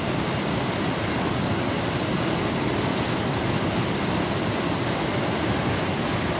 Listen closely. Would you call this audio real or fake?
real